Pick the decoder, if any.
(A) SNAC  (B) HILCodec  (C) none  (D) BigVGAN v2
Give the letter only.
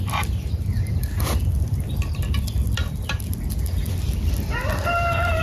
C